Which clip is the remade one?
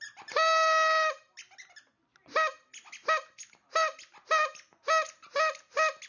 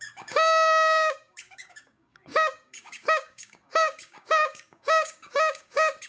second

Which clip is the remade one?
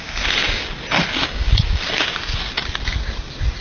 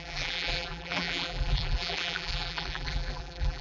second